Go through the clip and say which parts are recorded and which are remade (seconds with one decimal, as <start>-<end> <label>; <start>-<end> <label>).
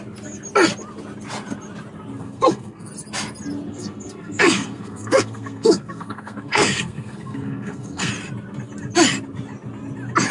0.0-2.2 recorded; 2.2-2.9 remade; 2.9-3.7 recorded; 3.7-8.1 remade; 8.1-10.3 recorded